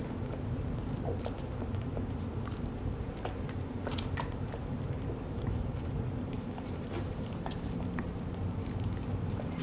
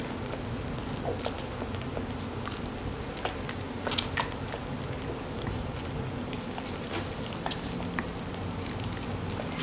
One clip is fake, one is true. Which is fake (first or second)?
first